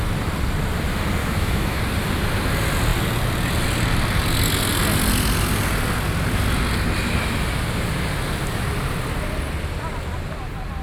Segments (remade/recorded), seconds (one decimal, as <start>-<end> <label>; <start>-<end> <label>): 0.0-1.2 recorded; 1.2-1.8 remade; 1.8-10.8 recorded